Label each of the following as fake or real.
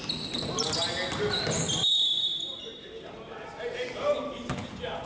real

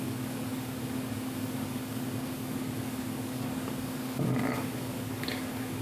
fake